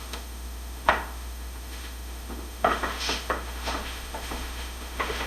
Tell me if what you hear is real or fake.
fake